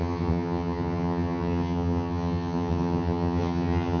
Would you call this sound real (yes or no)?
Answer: no